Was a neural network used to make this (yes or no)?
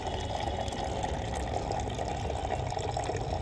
no